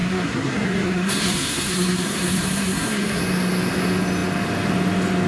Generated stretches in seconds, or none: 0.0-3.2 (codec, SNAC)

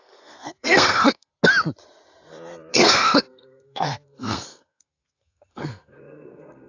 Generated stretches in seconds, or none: 0.0-1.3 (codec, SNAC); 2.7-6.7

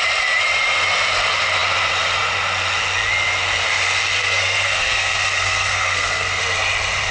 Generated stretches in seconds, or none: 4.2-6.4 (codec, SNAC)

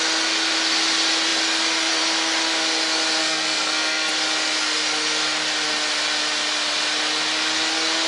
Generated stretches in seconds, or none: 3.2-4.1 (codec, SNAC)

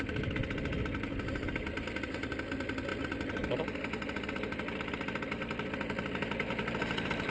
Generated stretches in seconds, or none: none

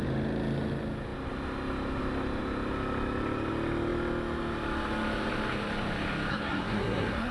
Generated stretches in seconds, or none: 6.3-7.3 (codec, SNAC)

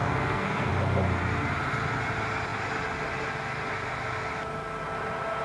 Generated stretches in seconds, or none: 0.0-0.7 (codec, SNAC)

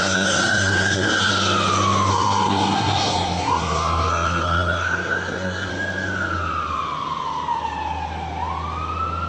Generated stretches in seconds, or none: 0.0-1.3 (codec, SNAC); 2.1-5.7